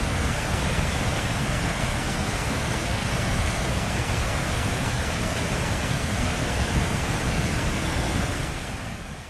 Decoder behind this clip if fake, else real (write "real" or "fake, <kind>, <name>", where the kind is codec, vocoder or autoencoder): fake, codec, SNAC